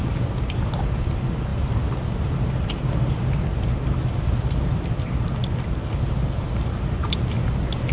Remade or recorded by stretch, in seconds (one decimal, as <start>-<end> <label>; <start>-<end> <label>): 0.0-7.9 recorded